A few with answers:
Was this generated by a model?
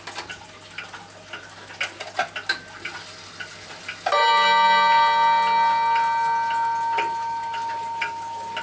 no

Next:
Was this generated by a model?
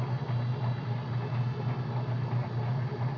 no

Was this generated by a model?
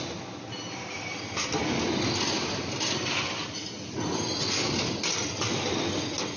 no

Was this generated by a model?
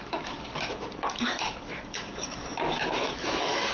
yes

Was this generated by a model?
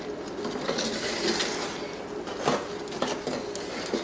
no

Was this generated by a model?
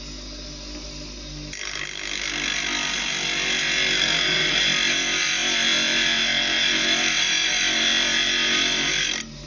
no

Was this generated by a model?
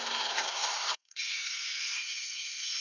yes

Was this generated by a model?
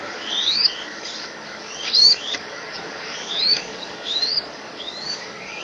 yes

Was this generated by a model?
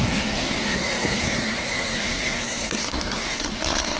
yes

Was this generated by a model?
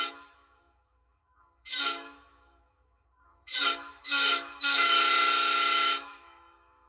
yes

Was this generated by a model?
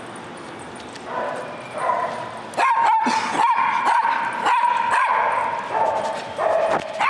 no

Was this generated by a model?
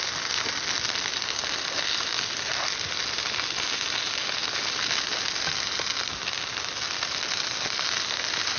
no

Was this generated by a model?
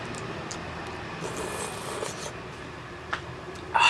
no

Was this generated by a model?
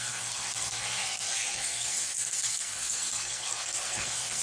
yes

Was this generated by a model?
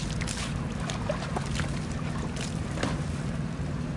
no